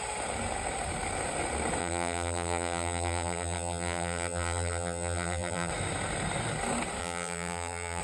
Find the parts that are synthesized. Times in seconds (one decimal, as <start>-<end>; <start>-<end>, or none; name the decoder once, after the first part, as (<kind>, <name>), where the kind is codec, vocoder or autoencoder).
1.8-5.7 (vocoder, BigVGAN v2); 7.0-8.0